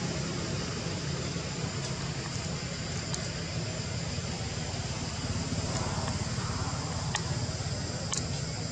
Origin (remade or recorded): recorded